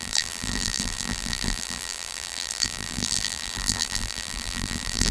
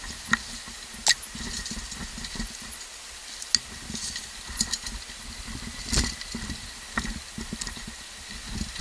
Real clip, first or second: second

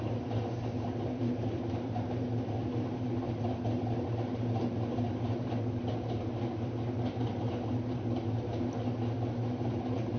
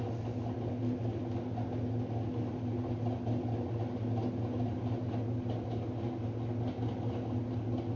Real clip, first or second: second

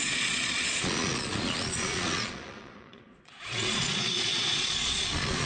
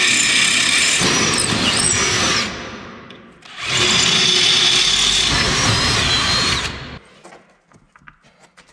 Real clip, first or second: second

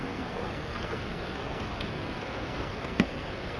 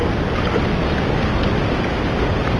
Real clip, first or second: second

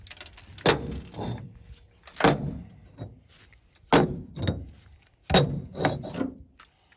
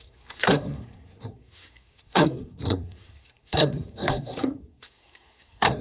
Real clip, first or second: first